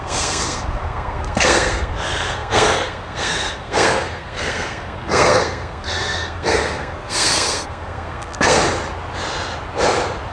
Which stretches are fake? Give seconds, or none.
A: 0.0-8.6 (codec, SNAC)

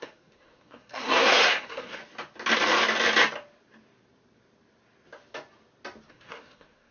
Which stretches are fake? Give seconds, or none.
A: 0.0-2.0 (codec, SNAC); 6.1-6.9

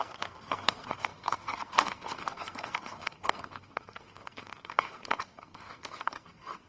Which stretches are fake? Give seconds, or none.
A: 0.0-6.7 (codec, SNAC)

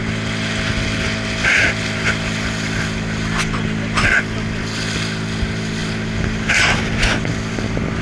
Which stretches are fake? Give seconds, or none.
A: none

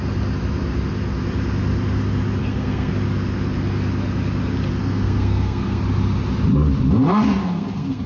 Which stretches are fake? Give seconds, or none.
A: 2.4-2.9 (codec, SNAC); 4.8-5.8; 7.4-8.1

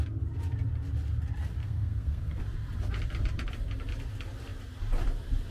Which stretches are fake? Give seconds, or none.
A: 1.6-2.4 (codec, SNAC)

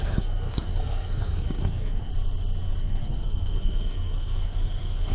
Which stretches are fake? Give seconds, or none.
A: 0.0-2.1 (codec, SNAC); 2.8-5.1

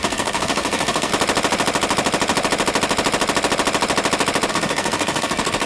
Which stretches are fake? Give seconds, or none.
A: 0.0-1.1 (codec, SNAC); 4.5-5.7